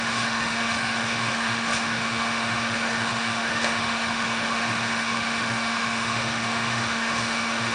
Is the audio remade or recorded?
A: remade